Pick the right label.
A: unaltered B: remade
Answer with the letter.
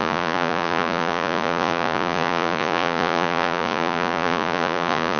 B